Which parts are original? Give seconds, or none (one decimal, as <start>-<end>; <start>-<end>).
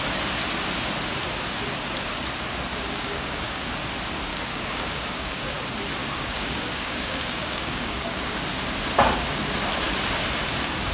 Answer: 0.0-2.7; 3.7-4.3; 5.5-6.0; 8.3-10.9